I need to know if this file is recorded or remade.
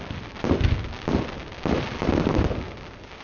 recorded